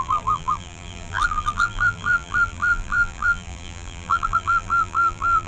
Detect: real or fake fake